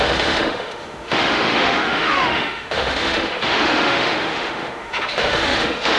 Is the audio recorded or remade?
remade